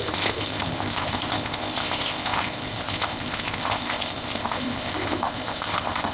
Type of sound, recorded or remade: remade